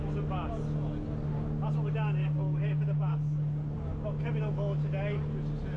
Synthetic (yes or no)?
no